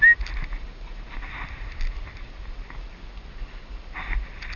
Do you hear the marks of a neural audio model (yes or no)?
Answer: no